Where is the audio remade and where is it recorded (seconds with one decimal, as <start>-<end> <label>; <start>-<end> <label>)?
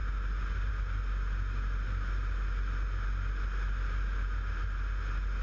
0.0-5.4 recorded